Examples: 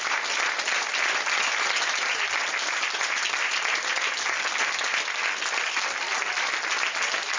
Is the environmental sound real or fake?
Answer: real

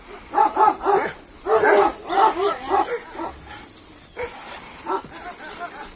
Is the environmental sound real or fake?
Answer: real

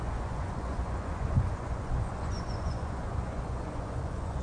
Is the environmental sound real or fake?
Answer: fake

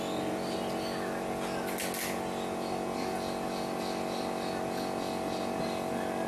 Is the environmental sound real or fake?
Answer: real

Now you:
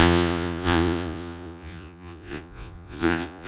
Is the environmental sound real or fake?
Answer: fake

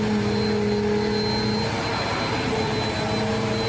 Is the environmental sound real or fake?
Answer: real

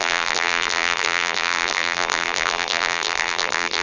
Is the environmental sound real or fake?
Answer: fake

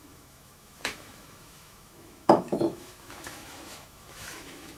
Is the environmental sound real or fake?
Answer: fake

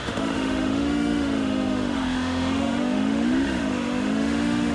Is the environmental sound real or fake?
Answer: fake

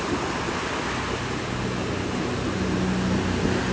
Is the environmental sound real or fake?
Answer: real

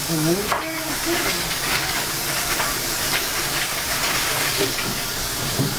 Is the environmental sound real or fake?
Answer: fake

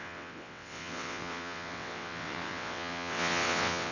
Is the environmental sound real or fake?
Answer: fake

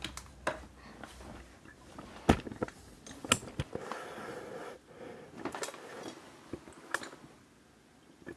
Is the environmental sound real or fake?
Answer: real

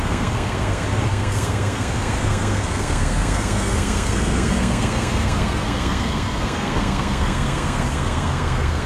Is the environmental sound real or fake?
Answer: fake